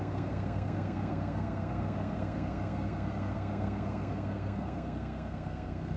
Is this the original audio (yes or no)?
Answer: no